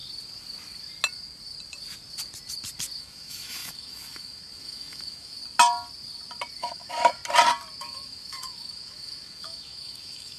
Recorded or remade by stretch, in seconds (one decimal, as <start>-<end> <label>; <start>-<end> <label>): 0.0-3.0 recorded; 3.0-5.4 remade; 5.4-6.6 recorded; 6.6-7.2 remade; 7.2-7.8 recorded; 7.8-10.4 remade